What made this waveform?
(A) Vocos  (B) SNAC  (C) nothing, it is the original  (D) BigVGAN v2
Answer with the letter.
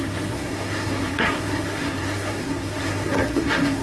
B